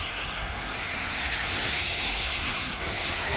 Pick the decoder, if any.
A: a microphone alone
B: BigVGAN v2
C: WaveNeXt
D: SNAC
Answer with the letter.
D